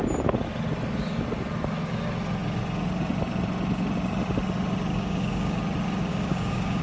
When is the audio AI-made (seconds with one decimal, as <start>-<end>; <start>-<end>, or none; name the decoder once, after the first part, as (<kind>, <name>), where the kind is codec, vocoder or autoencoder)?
4.9-5.6 (codec, DAC); 6.1-6.8